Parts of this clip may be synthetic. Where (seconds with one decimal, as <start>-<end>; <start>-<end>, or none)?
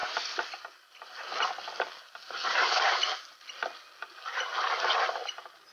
0.0-1.1